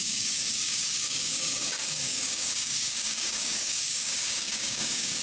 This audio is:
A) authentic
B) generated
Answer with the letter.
B